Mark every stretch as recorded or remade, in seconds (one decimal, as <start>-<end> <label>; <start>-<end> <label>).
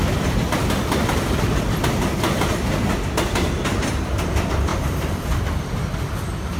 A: 0.0-1.0 remade; 1.0-4.7 recorded; 4.7-5.4 remade; 5.4-6.6 recorded